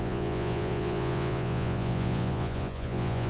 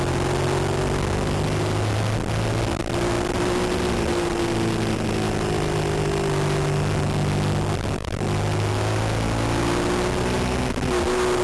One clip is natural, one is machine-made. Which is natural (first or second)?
second